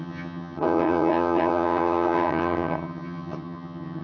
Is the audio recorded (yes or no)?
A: no